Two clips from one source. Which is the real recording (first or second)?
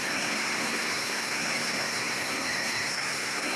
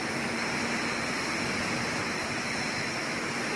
second